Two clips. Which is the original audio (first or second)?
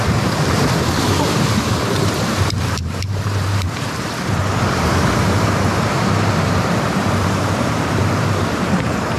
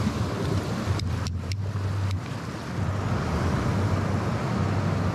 second